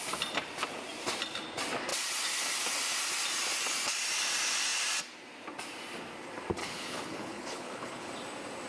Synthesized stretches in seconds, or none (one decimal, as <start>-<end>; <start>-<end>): 6.6-8.1